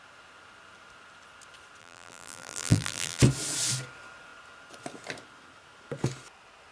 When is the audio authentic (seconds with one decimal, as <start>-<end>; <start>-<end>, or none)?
0.0-1.8; 3.2-6.7